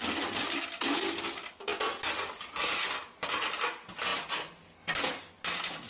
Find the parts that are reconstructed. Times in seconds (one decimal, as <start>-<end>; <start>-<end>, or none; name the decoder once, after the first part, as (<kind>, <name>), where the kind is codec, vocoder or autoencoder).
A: none